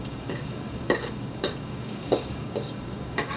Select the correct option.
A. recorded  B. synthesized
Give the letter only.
B